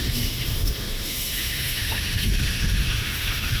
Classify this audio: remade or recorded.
remade